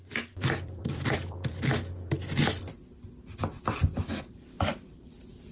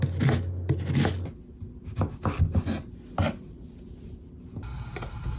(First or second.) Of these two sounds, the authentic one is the second